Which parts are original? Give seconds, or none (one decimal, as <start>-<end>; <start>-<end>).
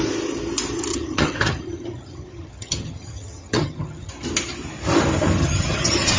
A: 0.0-0.9; 4.1-5.4